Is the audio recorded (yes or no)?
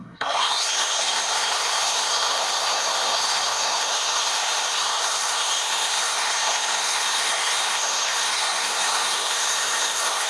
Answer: no